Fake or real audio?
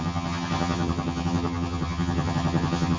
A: fake